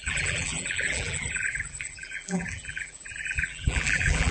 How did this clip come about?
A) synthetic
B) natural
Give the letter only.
A